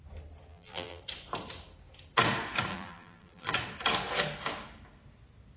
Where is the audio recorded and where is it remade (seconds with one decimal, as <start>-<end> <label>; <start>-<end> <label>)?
0.0-0.5 recorded; 0.5-1.0 remade; 1.0-2.7 recorded; 2.7-3.5 remade; 3.5-5.6 recorded